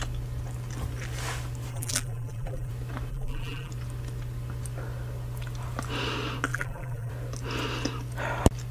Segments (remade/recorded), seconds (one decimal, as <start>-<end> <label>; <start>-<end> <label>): 0.0-1.7 recorded; 1.7-2.7 remade; 2.7-3.1 recorded; 3.1-3.7 remade; 3.7-6.5 recorded; 6.5-7.1 remade; 7.1-8.7 recorded